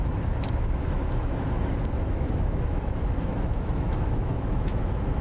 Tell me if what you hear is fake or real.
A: fake